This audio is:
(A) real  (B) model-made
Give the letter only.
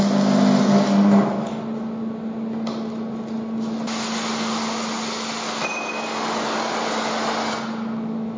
A